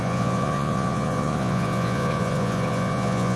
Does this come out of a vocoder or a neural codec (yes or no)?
yes